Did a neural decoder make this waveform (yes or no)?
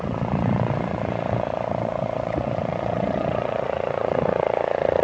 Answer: yes